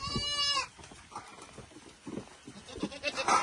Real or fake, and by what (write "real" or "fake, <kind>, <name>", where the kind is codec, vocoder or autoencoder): real